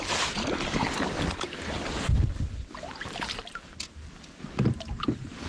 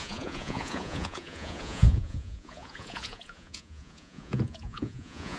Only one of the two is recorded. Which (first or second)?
first